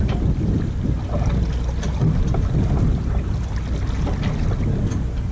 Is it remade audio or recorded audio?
recorded